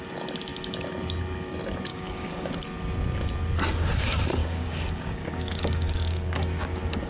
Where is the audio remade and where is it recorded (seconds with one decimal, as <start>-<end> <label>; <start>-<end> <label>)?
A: 0.0-1.9 recorded; 1.9-2.5 remade; 2.5-4.4 recorded; 4.4-7.1 remade